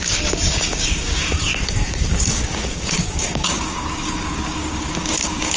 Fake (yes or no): yes